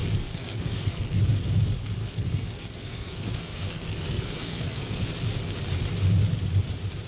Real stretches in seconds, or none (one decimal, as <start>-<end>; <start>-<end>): 1.2-2.0; 5.0-7.1